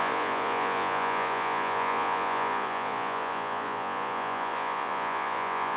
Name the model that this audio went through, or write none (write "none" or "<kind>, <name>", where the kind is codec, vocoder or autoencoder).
vocoder, Vocos